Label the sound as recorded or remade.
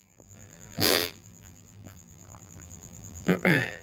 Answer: remade